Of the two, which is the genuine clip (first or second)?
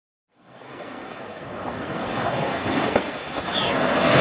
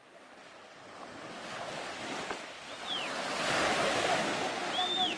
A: second